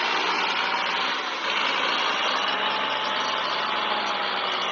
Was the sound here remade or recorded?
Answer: recorded